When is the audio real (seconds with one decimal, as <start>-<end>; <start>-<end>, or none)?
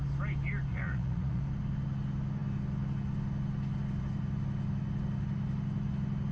0.0-0.7; 1.4-6.3